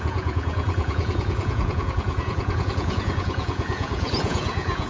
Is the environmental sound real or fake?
fake